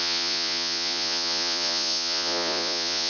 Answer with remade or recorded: remade